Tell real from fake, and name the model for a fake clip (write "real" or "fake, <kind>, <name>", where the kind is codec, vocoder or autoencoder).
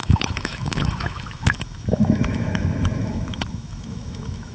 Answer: fake, autoencoder, DAC-VAE